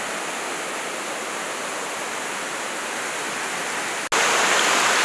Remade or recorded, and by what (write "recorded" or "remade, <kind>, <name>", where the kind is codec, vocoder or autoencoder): recorded